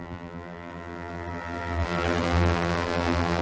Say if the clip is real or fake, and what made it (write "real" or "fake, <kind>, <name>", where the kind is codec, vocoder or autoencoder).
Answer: fake, vocoder, BigVGAN v2